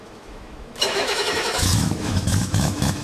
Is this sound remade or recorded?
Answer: remade